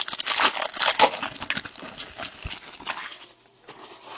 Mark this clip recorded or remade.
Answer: recorded